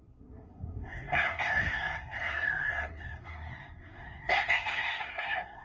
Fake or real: fake